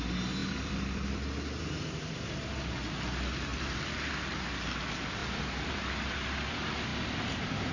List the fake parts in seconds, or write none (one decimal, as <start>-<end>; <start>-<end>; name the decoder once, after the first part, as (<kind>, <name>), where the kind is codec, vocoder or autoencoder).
0.4-2.7 (vocoder, BigVGAN v2); 3.5-4.1; 5.2-6.5; 6.9-7.7

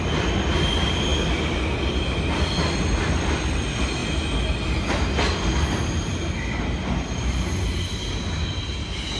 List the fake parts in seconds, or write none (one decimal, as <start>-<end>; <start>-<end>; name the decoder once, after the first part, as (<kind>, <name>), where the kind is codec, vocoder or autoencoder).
none

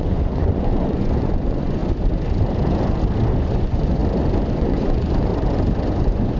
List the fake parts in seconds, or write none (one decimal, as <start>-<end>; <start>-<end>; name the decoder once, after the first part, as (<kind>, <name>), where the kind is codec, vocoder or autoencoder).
0.0-1.8 (vocoder, Vocos); 3.4-4.0; 4.5-5.3; 5.9-6.4

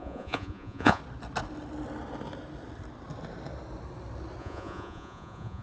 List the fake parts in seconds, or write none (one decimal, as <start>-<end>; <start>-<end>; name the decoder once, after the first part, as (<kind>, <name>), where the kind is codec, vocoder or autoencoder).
0.0-1.0 (vocoder, Vocos); 4.4-5.6

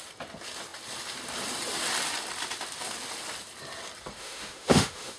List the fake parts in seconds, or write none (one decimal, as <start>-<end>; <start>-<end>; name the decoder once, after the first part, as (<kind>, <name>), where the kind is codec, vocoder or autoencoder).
4.2-5.2 (autoencoder, DAC-VAE)

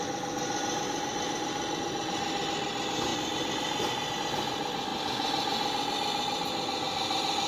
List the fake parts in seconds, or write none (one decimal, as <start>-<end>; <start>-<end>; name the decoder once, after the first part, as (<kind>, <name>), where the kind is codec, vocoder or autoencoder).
none

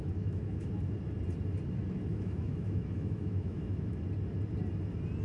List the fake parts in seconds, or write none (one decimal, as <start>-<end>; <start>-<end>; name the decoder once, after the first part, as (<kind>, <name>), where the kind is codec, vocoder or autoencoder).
0.0-0.7 (autoencoder, DAC-VAE); 2.1-4.0

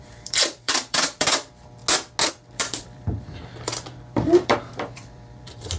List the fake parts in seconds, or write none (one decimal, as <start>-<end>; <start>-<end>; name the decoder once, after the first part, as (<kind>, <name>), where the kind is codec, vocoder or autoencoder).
0.0-1.8 (vocoder, BigVGAN v2); 2.3-5.8